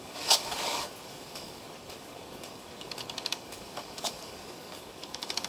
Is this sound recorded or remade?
remade